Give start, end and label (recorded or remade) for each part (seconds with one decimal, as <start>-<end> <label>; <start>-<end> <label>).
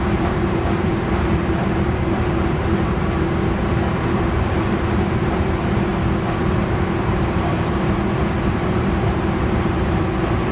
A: 0.0-5.9 remade; 5.9-6.4 recorded; 6.4-10.5 remade